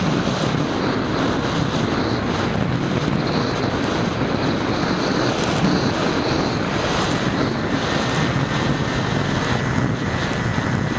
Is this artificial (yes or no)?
no